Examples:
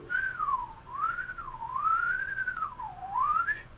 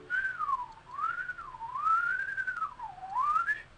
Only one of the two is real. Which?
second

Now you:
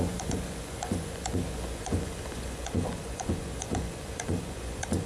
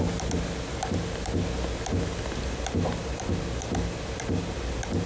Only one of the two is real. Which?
second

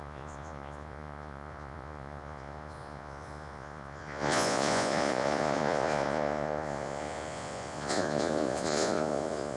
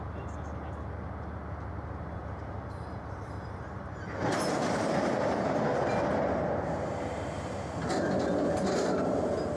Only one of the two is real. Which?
second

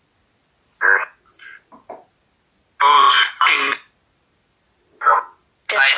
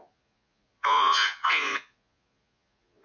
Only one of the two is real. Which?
first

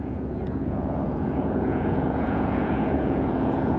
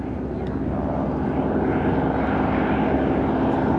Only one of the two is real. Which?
second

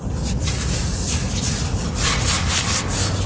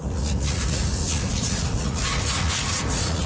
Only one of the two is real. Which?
first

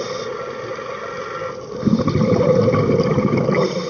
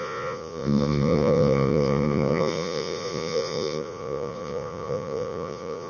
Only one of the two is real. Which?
first